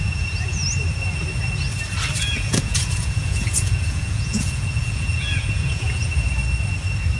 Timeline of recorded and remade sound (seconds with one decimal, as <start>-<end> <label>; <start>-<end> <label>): 0.0-0.6 remade; 0.6-2.2 recorded; 2.2-6.4 remade; 6.4-7.2 recorded